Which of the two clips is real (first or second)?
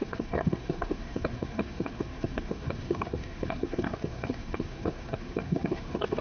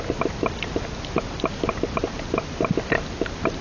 second